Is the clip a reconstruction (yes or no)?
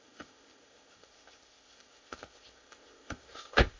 yes